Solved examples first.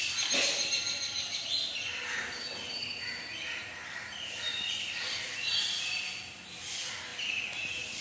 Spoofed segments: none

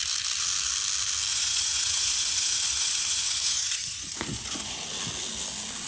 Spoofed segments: 1.3-4.8 (vocoder, Vocos)

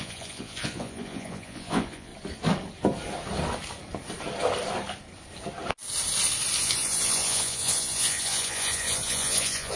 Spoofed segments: 0.0-2.1 (vocoder, Vocos); 6.6-9.8

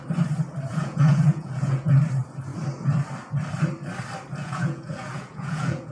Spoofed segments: 0.7-1.9 (vocoder, Vocos); 4.4-5.9

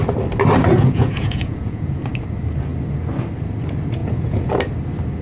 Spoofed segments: 0.7-2.1 (vocoder, Vocos); 4.0-4.5

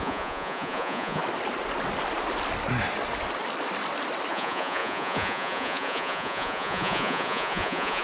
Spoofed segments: 0.0-1.2 (vocoder, Vocos); 4.3-8.0

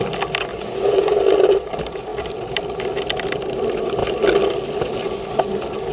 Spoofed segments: 0.5-1.2 (vocoder, Vocos)